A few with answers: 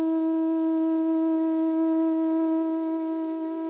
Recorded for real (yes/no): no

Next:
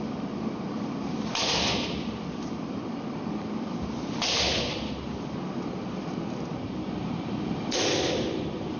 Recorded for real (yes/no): no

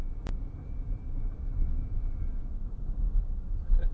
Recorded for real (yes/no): yes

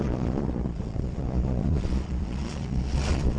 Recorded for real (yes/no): no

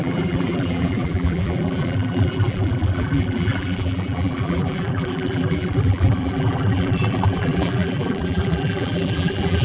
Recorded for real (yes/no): no